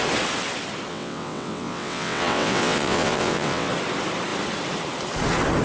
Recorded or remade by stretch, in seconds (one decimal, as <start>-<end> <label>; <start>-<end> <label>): 0.0-0.9 recorded; 0.9-3.7 remade; 3.7-5.6 recorded